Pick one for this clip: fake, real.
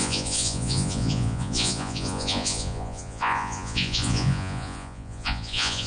fake